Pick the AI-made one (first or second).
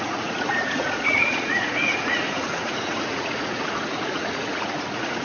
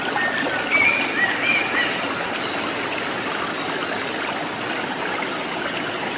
first